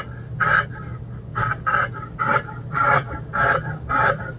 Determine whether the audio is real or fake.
real